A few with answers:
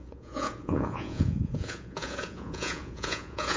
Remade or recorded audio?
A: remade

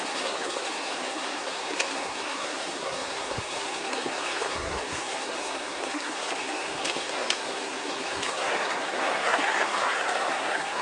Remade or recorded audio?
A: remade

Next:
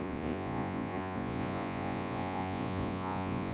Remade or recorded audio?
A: remade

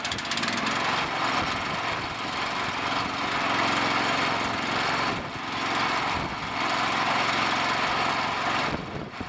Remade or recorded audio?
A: recorded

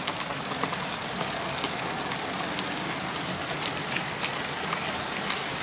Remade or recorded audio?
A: recorded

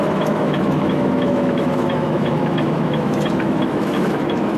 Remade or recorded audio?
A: remade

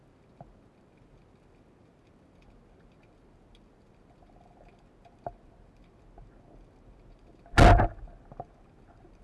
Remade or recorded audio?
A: recorded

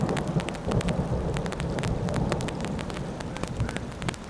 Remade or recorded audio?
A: recorded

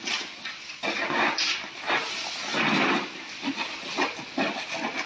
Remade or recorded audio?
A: recorded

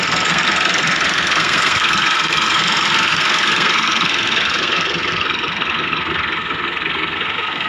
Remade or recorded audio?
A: remade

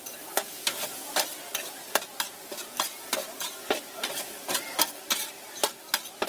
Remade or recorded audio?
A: recorded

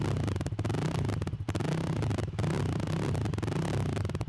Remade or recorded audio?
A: recorded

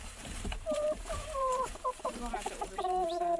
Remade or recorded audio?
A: remade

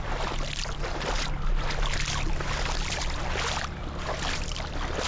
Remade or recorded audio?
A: recorded